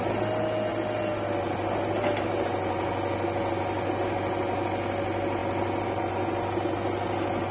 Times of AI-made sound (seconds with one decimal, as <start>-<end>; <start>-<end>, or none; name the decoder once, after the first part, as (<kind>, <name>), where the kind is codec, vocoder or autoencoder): none